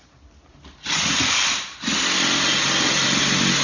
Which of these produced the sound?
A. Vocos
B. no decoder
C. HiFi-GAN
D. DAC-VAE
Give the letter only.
B